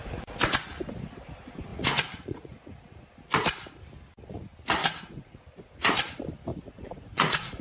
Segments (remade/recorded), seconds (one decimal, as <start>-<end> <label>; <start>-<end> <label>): 0.0-1.7 recorded; 1.7-3.0 remade; 3.0-4.8 recorded; 4.8-6.1 remade; 6.1-6.5 recorded; 6.5-7.6 remade